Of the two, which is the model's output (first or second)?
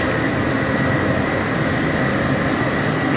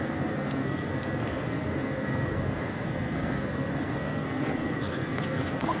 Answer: second